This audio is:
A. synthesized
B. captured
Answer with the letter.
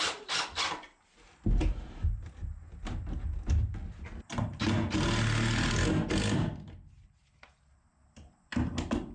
B